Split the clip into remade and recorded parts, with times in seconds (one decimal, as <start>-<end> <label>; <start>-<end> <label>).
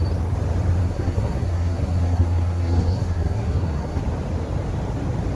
0.0-0.8 recorded; 0.8-4.0 remade; 4.0-5.3 recorded